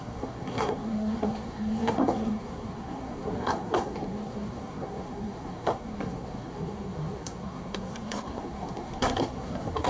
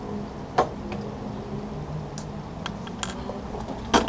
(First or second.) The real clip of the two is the second